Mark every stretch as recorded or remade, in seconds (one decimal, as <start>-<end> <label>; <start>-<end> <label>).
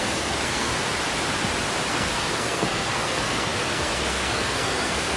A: 0.0-0.7 remade; 0.7-1.9 recorded; 1.9-5.2 remade